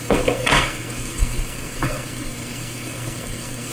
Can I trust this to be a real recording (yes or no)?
no